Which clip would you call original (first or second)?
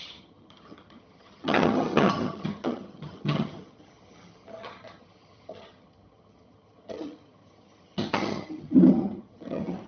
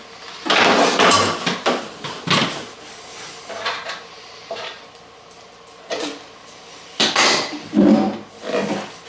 second